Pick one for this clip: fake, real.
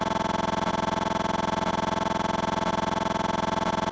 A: fake